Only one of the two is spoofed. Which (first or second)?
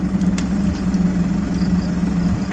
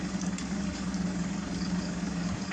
second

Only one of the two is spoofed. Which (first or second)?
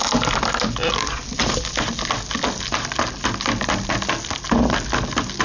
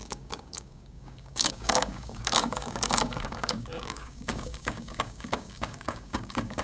second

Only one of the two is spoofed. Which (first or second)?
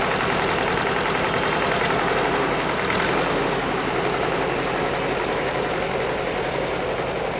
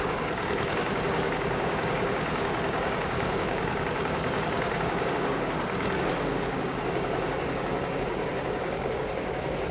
second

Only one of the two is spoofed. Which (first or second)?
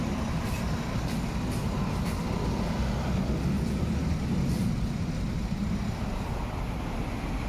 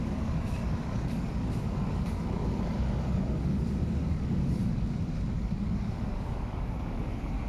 second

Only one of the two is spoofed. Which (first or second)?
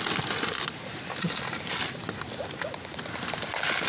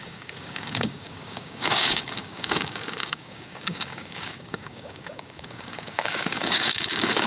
second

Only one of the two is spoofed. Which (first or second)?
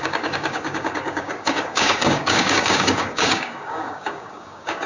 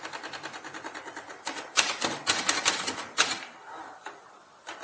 first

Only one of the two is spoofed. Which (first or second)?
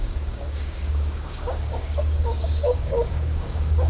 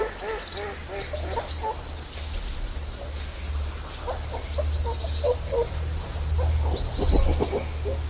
first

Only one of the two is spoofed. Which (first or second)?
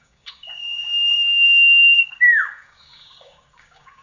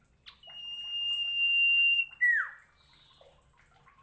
first